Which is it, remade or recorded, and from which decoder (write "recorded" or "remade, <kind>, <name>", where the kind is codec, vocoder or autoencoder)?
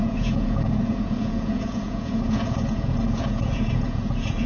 remade, vocoder, Vocos